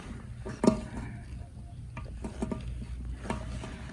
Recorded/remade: recorded